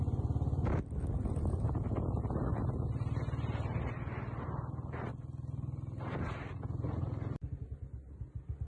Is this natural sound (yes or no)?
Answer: yes